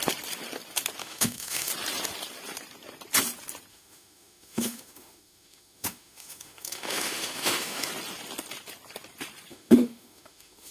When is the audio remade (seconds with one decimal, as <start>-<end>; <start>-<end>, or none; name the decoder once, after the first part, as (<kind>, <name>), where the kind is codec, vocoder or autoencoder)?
1.0-1.7 (autoencoder, DAC-VAE); 3.7-7.9; 9.5-10.7